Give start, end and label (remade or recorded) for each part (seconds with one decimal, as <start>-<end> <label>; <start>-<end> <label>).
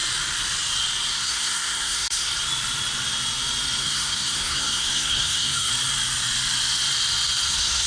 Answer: 0.0-1.1 recorded; 1.1-2.3 remade; 2.3-3.8 recorded; 3.8-5.7 remade; 5.7-7.5 recorded; 7.5-7.9 remade